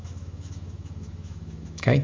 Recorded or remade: remade